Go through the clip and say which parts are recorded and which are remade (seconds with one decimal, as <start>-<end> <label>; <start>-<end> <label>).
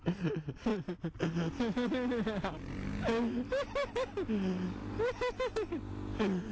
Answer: 0.0-6.5 recorded